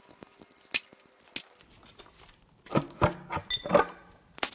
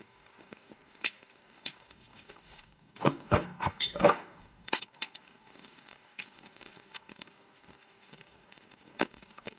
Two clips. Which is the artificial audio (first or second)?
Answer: second